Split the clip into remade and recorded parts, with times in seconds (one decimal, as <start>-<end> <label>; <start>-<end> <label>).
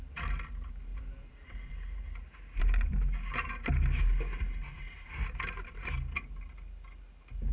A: 0.0-0.9 recorded; 0.9-1.7 remade; 1.7-7.5 recorded